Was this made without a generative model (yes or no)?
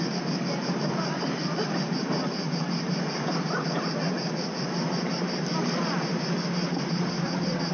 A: yes